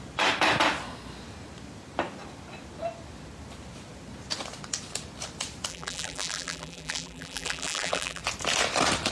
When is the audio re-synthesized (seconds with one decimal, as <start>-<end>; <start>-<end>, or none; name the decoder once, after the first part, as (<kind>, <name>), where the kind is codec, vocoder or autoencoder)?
5.7-8.2 (vocoder, BigVGAN v2)